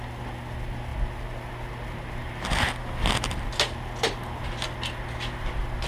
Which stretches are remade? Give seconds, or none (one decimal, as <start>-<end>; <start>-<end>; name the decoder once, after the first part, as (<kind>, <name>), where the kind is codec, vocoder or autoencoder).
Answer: none